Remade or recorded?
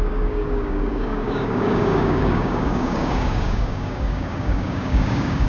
remade